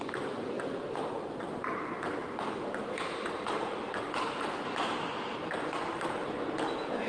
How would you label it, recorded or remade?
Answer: remade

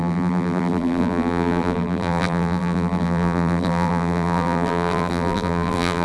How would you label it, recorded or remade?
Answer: remade